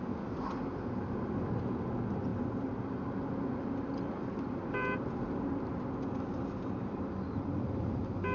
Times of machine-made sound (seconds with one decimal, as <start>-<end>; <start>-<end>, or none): none